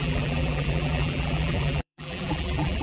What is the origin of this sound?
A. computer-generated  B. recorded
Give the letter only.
A